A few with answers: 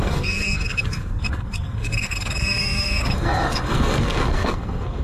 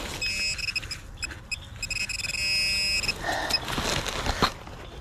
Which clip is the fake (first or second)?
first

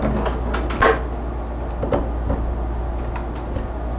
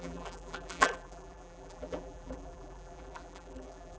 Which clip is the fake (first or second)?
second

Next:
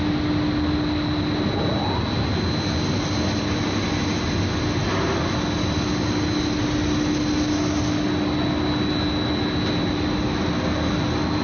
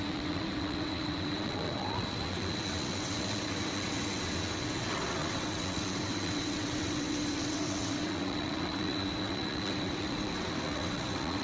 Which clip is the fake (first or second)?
second